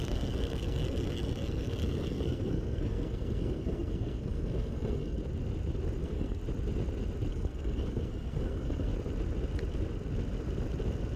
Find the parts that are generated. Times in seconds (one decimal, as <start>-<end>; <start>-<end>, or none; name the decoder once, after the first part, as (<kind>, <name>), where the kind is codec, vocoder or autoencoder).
0.0-5.2 (codec, SNAC); 6.0-6.4; 7.3-8.9